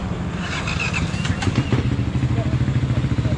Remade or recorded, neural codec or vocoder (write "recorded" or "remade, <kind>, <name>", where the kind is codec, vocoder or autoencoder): recorded